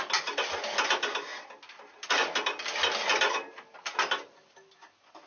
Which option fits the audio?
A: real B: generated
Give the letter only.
A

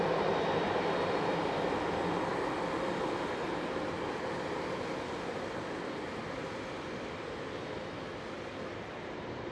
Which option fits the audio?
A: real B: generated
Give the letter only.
A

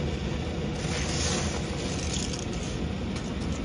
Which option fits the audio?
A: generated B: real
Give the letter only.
B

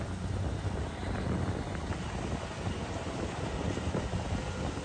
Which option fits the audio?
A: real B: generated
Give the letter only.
A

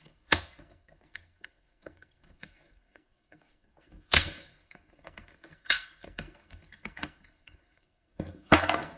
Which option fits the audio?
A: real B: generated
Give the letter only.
B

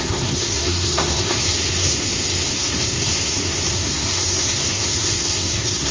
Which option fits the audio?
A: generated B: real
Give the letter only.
A